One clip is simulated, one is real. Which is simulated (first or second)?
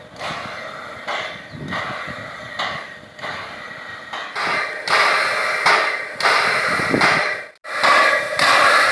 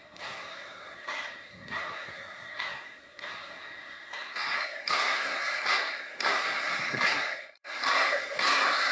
second